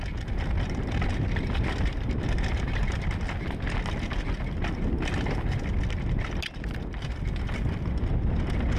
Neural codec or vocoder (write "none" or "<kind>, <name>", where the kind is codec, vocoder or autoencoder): none